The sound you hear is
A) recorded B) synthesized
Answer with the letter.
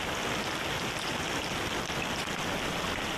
A